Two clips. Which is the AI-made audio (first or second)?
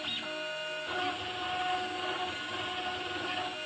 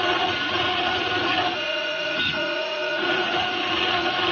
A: second